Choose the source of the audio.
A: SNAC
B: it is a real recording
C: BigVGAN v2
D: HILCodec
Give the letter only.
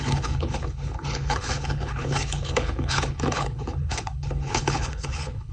D